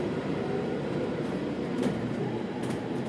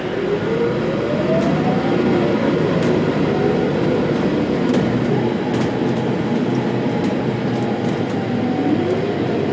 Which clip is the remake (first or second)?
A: first